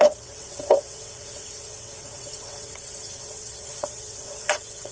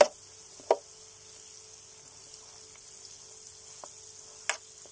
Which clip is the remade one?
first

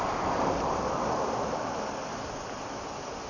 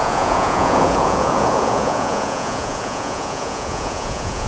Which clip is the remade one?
second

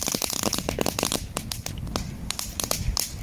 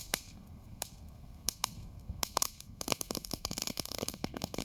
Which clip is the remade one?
second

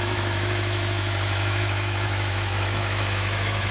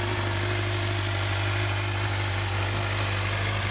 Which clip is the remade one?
first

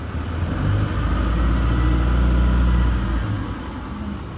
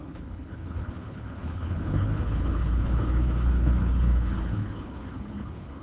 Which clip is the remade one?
second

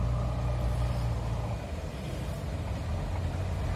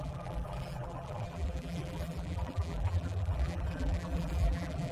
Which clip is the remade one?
second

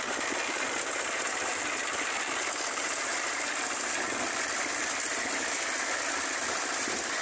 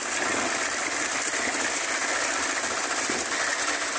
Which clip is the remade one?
first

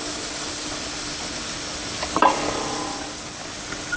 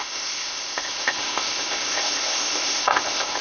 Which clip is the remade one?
second